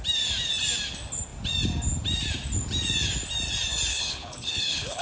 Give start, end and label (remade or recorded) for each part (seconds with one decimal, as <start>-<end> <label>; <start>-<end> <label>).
0.0-3.9 recorded; 3.9-5.0 remade